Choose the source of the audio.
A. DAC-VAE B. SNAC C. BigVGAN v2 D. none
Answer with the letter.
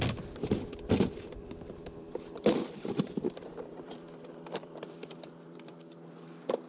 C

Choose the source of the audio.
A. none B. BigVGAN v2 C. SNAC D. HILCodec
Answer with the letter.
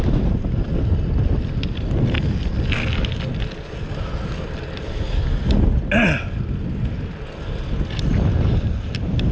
A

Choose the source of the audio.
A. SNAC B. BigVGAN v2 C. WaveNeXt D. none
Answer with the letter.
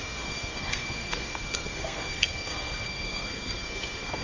A